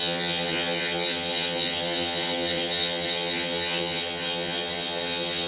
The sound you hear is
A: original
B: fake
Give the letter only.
B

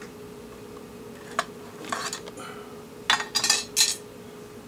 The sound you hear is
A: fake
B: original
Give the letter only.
B